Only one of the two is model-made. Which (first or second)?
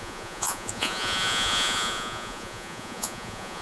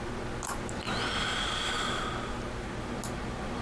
first